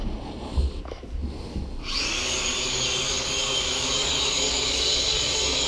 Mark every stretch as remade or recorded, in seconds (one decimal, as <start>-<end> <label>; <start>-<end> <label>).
0.0-2.0 recorded; 2.0-5.7 remade

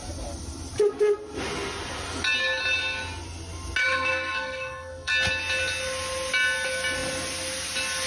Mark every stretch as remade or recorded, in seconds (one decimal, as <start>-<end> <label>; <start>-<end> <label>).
0.0-3.8 recorded; 3.8-5.1 remade; 5.1-8.1 recorded

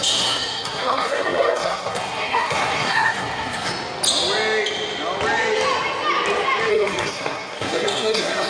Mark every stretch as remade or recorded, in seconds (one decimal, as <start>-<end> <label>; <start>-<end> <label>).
0.0-3.7 remade; 3.7-6.7 recorded; 6.7-8.5 remade

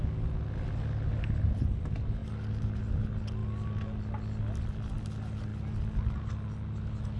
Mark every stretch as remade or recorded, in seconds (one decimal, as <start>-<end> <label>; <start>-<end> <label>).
0.0-7.2 recorded

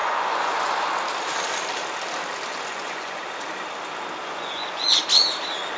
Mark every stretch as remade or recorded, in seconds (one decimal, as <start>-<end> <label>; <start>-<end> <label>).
0.0-0.9 remade; 0.9-2.5 recorded; 2.5-3.2 remade; 3.2-4.2 recorded; 4.2-5.0 remade; 5.0-5.8 recorded

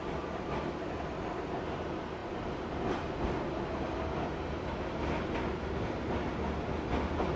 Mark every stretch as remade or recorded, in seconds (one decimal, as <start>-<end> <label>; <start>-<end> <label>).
0.0-7.4 recorded

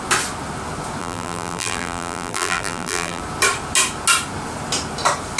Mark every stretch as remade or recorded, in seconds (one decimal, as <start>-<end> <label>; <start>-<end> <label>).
0.0-1.0 recorded; 1.0-3.2 remade; 3.2-5.4 recorded